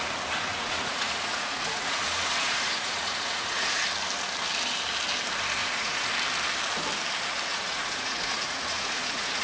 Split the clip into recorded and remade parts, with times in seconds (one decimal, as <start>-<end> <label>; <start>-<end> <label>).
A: 0.0-0.5 recorded; 0.5-3.8 remade; 3.8-5.6 recorded; 5.6-6.1 remade; 6.1-7.5 recorded; 7.5-9.4 remade